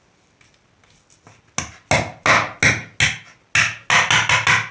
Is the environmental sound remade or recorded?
recorded